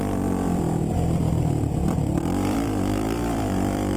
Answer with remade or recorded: remade